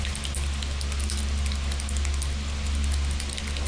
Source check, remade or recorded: recorded